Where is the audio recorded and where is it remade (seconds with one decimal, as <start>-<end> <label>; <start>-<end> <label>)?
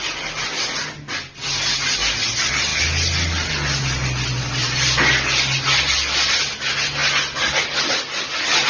0.0-8.7 recorded